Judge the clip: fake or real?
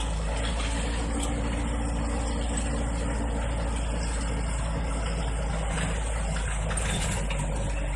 real